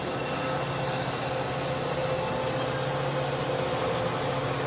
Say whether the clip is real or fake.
real